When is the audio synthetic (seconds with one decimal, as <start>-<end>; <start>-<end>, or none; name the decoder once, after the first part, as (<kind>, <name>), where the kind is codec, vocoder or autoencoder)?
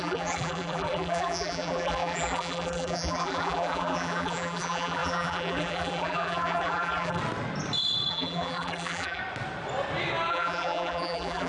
0.0-7.2 (vocoder, BigVGAN v2); 8.1-9.2; 10.3-11.5